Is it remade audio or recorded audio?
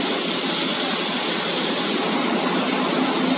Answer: recorded